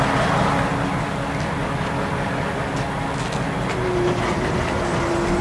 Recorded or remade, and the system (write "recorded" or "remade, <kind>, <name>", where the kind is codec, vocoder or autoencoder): recorded